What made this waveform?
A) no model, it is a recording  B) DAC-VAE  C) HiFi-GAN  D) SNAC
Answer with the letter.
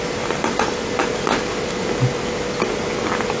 A